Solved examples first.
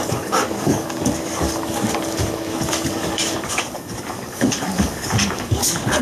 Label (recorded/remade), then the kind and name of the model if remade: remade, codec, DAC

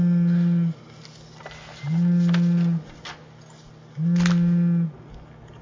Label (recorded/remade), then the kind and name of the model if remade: recorded